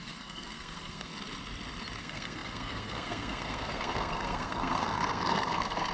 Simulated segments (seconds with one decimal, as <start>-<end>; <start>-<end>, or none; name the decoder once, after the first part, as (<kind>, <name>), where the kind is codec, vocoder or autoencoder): 0.0-1.1 (codec, SNAC); 2.0-5.9